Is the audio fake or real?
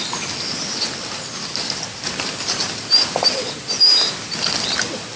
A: real